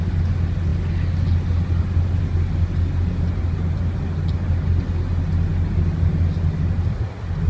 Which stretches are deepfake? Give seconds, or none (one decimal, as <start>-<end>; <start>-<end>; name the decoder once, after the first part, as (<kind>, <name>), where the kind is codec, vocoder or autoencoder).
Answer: none